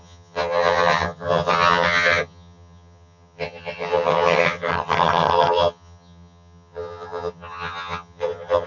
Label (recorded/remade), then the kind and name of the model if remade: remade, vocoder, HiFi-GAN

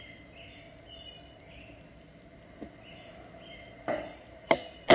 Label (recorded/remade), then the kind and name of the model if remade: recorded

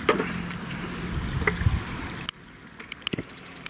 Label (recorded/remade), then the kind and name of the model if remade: recorded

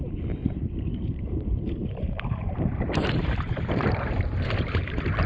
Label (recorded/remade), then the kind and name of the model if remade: remade, vocoder, BigVGAN v2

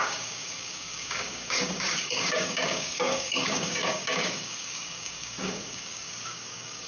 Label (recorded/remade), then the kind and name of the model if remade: remade, codec, DAC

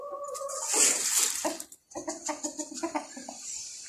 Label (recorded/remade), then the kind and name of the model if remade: recorded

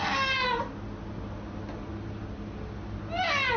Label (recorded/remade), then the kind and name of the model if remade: recorded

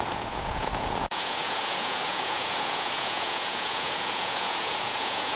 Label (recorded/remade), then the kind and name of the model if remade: remade, vocoder, Vocos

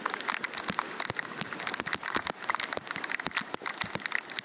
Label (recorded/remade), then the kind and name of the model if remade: recorded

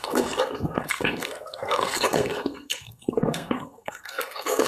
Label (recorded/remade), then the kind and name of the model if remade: remade, codec, SNAC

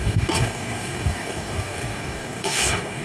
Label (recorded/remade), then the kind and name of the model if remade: remade, codec, DAC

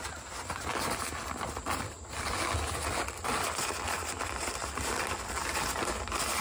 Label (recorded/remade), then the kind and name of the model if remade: recorded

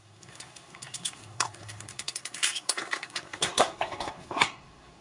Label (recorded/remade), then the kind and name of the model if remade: remade, codec, SNAC